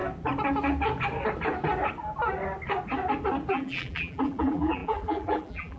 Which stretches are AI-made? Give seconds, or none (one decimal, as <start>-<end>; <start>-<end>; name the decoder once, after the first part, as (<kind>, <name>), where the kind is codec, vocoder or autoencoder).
3.5-5.8 (vocoder, BigVGAN v2)